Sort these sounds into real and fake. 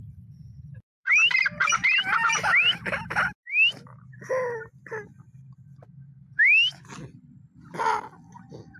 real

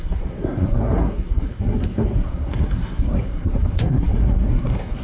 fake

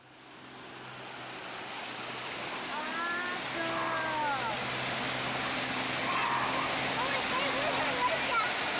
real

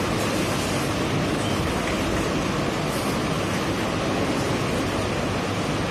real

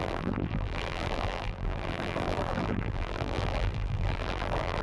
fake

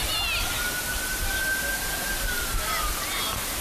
real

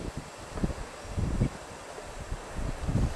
real